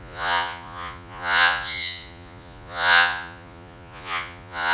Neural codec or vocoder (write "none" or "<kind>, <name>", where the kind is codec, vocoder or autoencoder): vocoder, Vocos